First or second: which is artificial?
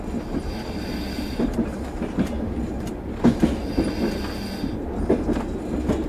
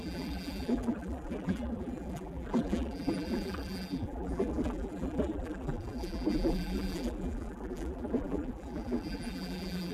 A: second